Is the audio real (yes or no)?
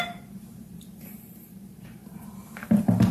no